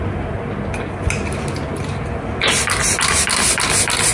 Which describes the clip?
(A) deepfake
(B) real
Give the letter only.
B